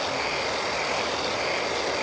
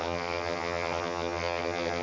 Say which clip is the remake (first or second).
second